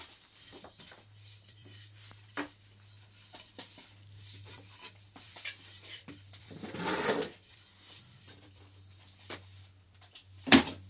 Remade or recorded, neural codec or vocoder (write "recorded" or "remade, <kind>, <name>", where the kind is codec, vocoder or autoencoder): remade, vocoder, BigVGAN v2